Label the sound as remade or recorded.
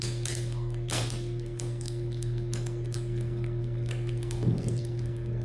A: remade